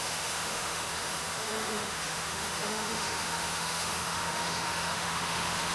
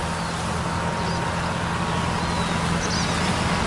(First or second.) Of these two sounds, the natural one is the second